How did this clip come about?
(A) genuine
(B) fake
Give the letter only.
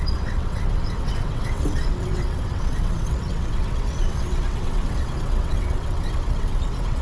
B